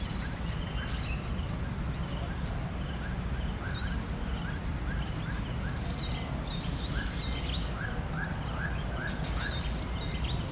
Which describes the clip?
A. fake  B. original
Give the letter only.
B